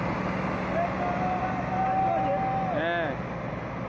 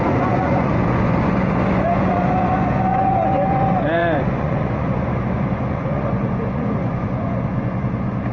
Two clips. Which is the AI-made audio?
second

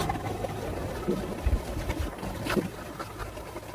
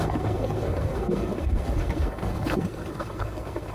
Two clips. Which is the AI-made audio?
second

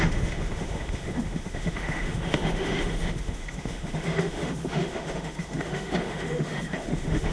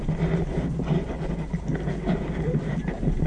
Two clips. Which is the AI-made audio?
first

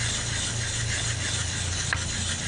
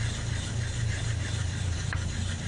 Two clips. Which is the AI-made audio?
second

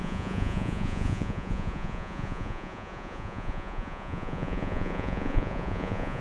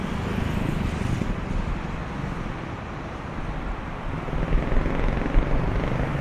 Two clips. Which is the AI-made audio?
first